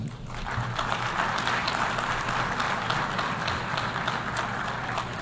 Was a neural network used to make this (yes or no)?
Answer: no